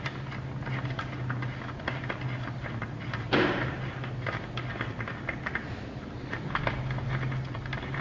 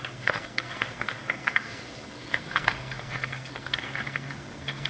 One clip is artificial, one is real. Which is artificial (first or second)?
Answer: second